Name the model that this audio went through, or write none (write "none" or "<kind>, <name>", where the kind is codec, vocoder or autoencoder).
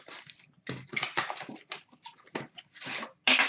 none